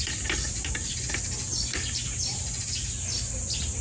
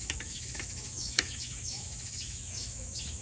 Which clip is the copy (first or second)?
second